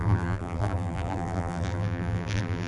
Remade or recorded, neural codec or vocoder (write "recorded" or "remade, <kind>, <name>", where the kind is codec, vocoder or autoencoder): remade, vocoder, BigVGAN v2